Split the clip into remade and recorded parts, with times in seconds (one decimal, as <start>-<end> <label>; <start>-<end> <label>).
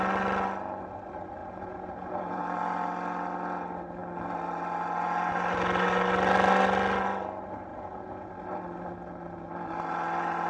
0.0-1.4 recorded; 1.4-2.4 remade; 2.4-7.7 recorded; 7.7-8.3 remade; 8.3-10.5 recorded